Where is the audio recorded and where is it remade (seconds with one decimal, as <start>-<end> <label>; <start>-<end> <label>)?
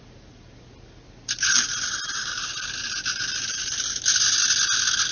0.0-5.1 recorded